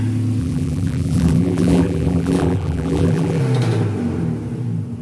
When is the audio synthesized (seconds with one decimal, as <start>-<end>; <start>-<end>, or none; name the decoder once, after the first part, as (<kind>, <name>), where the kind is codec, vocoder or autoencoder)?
0.4-3.4 (vocoder, BigVGAN v2)